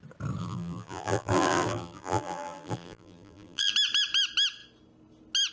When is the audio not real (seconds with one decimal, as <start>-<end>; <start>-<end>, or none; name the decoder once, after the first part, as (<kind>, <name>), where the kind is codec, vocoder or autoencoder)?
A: 0.4-3.7 (vocoder, BigVGAN v2)